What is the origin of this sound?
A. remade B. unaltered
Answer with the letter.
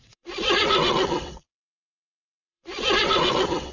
A